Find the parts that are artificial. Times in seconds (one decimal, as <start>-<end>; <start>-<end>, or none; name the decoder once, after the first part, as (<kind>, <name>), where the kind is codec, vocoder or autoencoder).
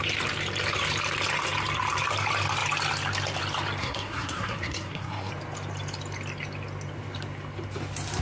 3.8-5.3 (codec, SNAC)